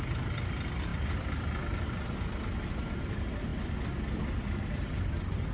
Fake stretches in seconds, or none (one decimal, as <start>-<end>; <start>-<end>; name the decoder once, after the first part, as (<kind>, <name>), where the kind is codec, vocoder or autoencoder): none